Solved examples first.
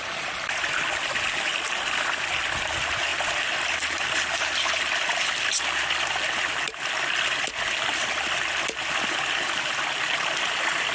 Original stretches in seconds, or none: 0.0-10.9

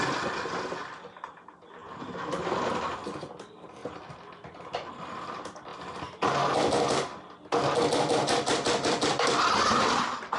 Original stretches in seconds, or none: 1.8-2.8; 3.8-4.9; 5.7-7.8

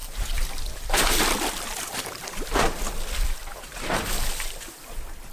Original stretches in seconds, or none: 0.0-5.3

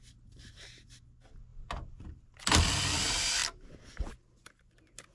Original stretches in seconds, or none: 0.0-5.1

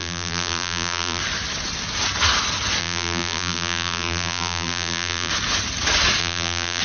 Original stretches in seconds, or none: 1.2-2.8; 5.3-6.2

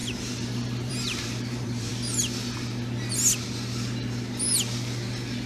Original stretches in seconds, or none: 1.9-5.5

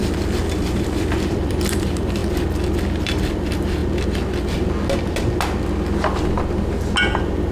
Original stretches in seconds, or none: 0.0-0.6; 2.2-3.0; 3.8-7.5

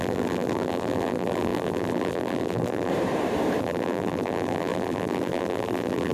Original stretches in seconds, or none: 2.9-3.6